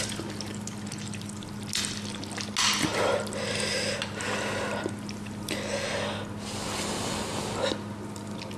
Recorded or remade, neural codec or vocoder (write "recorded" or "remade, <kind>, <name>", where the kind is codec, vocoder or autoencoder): recorded